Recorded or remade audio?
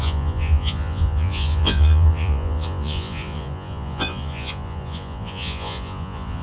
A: remade